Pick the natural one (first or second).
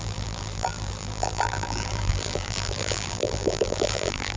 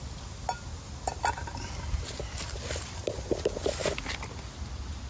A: second